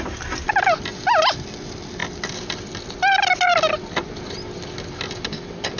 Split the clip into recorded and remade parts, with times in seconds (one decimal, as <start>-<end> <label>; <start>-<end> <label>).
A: 0.0-5.8 recorded